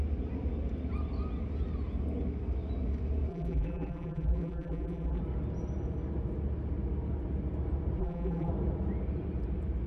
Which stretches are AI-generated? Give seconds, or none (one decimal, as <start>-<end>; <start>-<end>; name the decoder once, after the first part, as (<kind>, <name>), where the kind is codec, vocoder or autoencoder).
3.3-5.2 (vocoder, BigVGAN v2); 8.0-8.5